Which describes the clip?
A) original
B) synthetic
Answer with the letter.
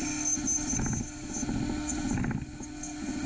A